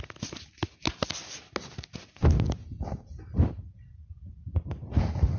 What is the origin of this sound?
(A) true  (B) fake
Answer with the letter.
A